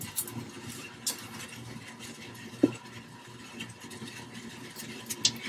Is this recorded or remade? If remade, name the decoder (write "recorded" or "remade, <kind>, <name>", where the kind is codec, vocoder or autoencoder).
recorded